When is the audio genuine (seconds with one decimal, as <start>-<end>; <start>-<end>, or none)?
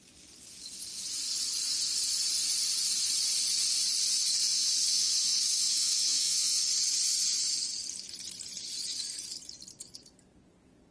0.0-4.4; 6.6-10.9